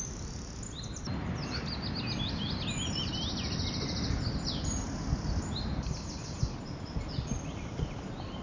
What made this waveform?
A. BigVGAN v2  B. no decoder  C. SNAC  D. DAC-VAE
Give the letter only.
B